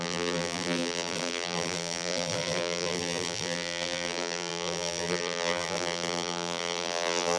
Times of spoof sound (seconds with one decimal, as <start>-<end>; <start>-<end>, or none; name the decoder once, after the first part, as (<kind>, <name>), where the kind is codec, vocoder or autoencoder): 0.0-7.4 (vocoder, BigVGAN v2)